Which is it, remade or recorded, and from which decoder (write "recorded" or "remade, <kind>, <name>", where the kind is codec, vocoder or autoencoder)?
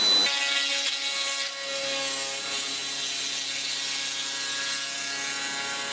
recorded